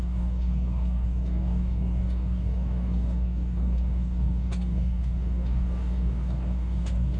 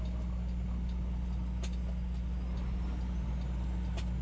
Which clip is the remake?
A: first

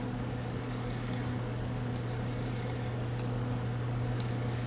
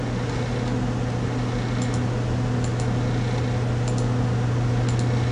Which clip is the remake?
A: first